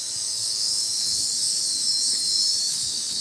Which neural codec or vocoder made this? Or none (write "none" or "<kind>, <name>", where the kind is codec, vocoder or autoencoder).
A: codec, DAC